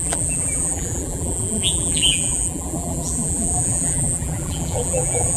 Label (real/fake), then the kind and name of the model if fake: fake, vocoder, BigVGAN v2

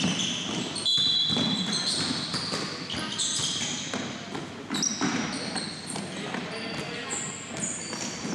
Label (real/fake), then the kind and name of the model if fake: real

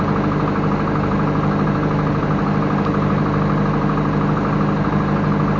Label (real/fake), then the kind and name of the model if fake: real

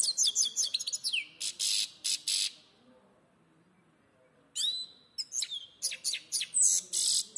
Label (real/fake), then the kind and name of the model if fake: real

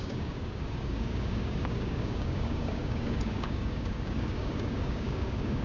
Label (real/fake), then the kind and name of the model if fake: fake, codec, DAC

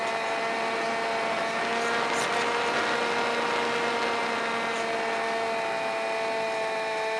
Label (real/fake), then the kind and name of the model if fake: real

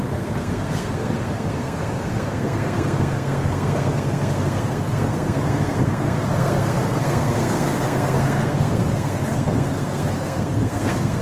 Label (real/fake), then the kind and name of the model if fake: fake, codec, SNAC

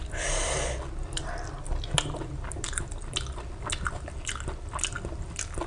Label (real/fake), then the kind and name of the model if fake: real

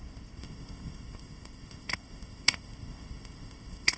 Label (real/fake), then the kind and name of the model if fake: fake, codec, ZipCodec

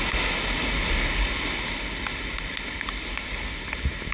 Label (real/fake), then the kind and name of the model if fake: real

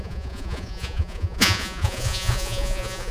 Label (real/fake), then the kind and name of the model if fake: fake, vocoder, Vocos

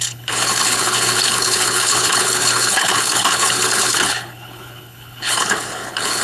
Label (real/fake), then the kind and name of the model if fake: fake, codec, HILCodec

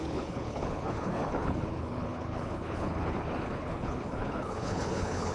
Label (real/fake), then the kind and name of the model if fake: fake, codec, HILCodec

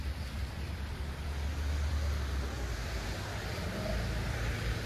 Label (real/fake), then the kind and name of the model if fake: real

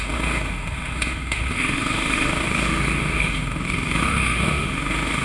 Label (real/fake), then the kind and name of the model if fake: fake, autoencoder, DAC-VAE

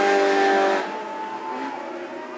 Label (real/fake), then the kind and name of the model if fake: real